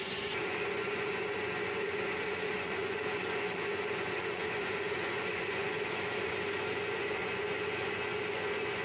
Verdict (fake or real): fake